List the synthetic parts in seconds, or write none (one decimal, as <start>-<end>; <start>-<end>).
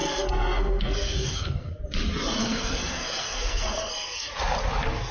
0.0-1.8; 2.4-4.3